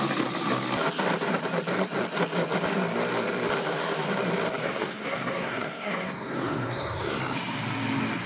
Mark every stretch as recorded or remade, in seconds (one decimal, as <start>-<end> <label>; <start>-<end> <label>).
0.0-4.6 recorded; 4.6-7.2 remade; 7.2-8.3 recorded